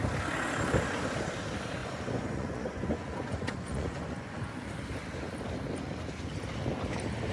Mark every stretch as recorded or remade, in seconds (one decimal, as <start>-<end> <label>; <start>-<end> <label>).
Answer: 0.0-1.8 recorded; 1.8-4.5 remade; 4.5-7.3 recorded